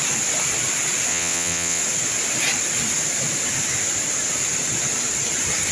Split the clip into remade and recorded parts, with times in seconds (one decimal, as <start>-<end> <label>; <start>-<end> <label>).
0.0-1.1 recorded; 1.1-1.8 remade; 1.8-5.7 recorded